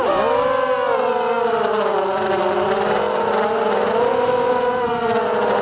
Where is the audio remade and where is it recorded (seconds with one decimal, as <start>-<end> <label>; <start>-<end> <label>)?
0.0-5.6 recorded